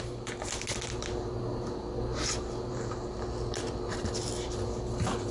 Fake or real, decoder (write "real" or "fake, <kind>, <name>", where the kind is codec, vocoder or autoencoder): real